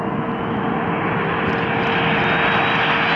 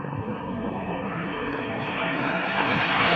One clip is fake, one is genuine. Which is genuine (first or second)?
first